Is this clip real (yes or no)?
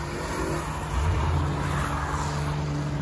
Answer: yes